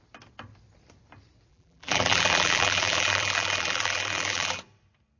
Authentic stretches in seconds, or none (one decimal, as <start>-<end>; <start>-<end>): 0.0-1.5; 4.6-5.2